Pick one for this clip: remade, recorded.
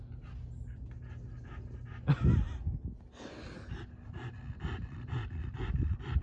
recorded